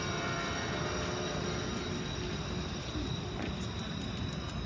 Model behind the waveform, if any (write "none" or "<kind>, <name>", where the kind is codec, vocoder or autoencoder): none